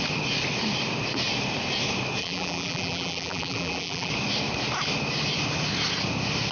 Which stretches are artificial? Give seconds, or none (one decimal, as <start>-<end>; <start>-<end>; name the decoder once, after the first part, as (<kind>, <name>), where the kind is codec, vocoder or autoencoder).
2.2-4.1 (vocoder, BigVGAN v2)